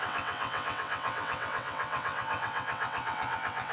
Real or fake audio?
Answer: fake